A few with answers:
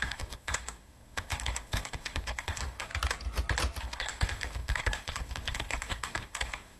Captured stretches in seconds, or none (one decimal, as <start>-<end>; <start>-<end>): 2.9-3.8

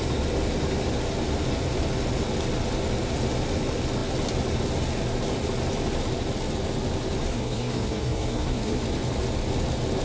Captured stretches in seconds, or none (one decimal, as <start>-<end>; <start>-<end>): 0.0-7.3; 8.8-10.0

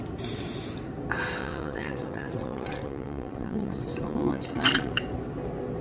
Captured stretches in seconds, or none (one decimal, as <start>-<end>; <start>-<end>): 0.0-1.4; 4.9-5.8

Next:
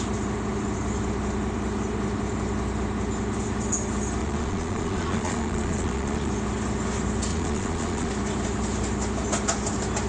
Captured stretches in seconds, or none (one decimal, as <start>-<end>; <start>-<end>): 0.0-4.2; 6.3-7.3; 8.1-10.1